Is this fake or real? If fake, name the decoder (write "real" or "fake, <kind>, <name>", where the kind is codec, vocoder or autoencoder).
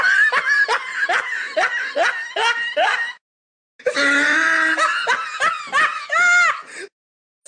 real